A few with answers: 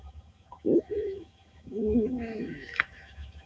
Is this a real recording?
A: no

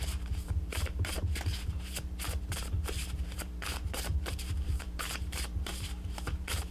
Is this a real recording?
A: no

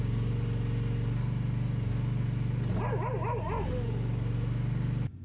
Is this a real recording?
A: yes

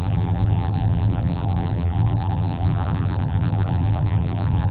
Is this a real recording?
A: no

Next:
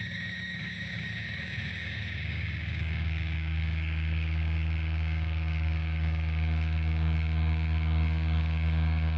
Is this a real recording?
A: no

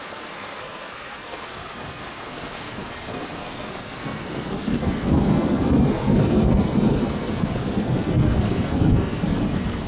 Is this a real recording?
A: no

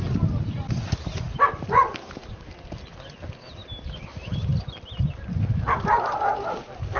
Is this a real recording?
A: yes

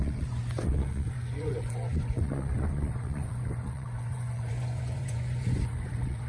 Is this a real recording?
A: no